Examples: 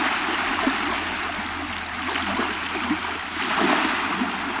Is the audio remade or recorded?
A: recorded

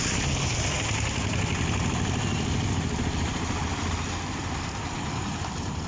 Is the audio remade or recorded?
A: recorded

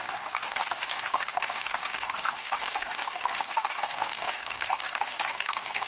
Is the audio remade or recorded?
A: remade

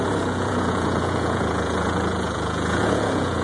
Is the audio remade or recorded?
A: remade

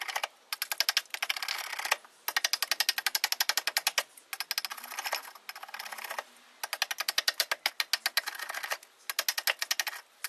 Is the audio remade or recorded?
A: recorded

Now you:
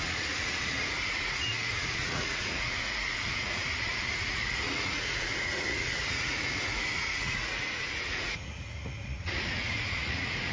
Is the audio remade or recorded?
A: remade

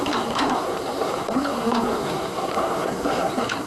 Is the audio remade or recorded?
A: remade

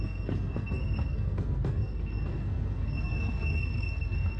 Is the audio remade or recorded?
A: remade